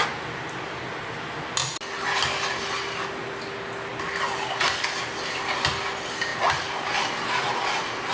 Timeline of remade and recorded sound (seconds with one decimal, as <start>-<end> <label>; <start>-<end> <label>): 0.0-8.1 recorded